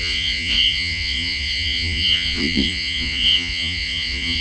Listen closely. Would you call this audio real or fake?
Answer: fake